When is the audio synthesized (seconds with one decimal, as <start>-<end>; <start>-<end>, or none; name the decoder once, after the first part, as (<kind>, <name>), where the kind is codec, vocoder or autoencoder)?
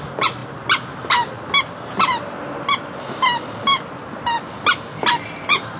none